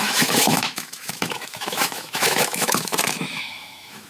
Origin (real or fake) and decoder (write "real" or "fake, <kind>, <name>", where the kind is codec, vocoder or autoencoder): fake, autoencoder, DAC-VAE